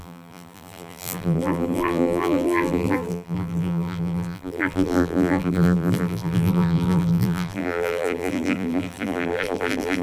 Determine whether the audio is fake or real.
fake